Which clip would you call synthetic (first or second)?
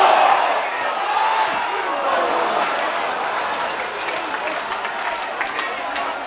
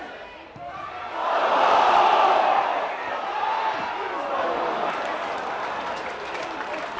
second